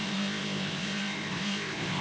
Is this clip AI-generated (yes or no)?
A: yes